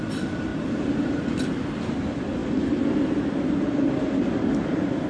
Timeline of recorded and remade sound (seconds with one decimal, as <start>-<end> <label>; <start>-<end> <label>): 0.0-5.1 recorded